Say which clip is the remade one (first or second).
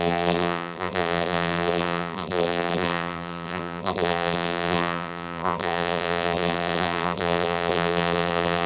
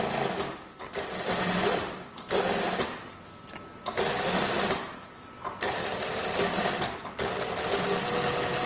first